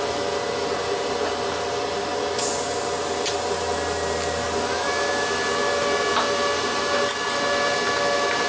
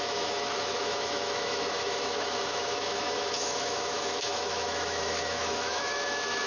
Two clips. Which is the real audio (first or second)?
first